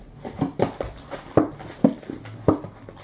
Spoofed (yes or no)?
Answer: no